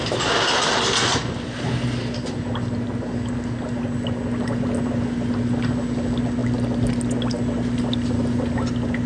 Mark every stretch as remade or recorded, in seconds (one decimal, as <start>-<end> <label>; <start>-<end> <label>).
0.0-9.1 recorded